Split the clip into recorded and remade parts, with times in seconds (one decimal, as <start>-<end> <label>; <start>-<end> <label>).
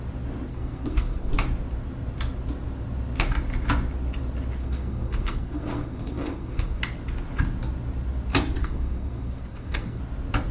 0.0-0.5 recorded; 0.5-1.3 remade; 1.3-4.6 recorded; 4.6-6.8 remade; 6.8-8.6 recorded; 8.6-10.0 remade; 10.0-10.5 recorded